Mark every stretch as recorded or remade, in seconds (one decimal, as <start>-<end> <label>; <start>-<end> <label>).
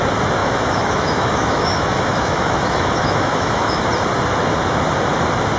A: 0.0-0.4 recorded; 0.4-3.8 remade; 3.8-5.6 recorded